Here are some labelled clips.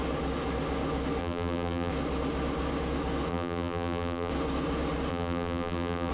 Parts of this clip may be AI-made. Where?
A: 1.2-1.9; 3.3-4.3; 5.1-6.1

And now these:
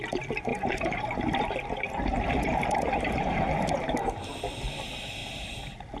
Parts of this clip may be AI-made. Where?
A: 0.5-4.1

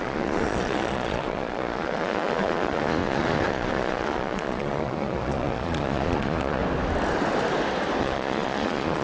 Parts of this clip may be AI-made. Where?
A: 0.0-6.6; 8.0-9.0

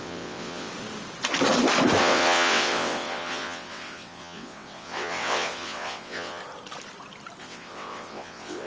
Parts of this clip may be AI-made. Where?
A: 0.0-0.7; 2.0-6.4; 7.4-8.7